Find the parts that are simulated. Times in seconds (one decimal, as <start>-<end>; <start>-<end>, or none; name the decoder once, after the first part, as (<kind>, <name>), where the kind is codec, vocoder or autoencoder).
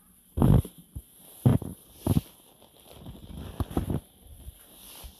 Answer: none